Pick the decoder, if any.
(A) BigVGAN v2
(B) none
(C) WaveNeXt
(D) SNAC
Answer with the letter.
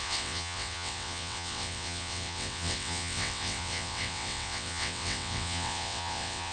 C